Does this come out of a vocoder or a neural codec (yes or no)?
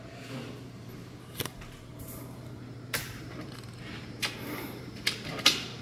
yes